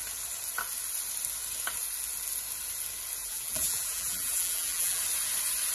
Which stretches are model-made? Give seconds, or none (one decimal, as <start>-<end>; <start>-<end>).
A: 3.2-5.0